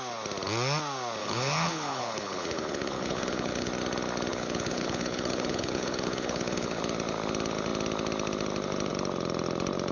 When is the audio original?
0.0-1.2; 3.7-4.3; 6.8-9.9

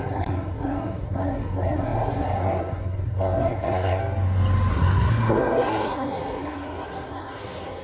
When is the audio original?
4.0-4.7

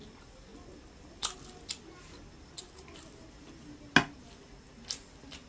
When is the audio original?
0.0-5.5

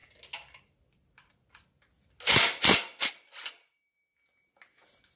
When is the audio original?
0.0-5.2

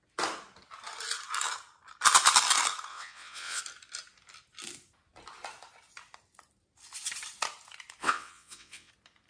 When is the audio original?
0.0-2.9; 3.6-8.0; 8.9-9.3